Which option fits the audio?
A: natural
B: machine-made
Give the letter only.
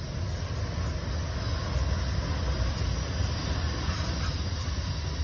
A